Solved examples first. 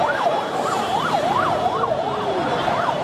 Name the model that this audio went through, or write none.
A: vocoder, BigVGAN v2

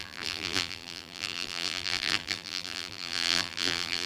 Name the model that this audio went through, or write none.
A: vocoder, BigVGAN v2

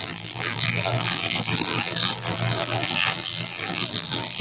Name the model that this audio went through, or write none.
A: vocoder, BigVGAN v2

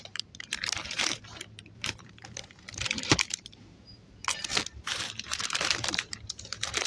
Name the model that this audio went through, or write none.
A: vocoder, BigVGAN v2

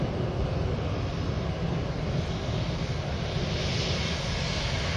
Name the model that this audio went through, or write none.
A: none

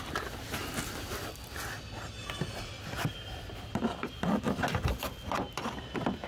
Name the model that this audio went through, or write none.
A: none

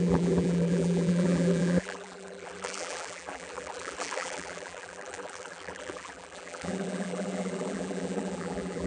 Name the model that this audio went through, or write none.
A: vocoder, BigVGAN v2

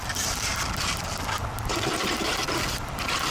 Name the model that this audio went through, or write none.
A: vocoder, BigVGAN v2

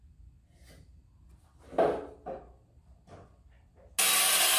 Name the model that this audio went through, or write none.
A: none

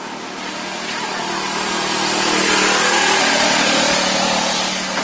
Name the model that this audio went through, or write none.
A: none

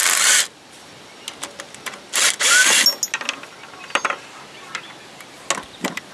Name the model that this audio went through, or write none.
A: none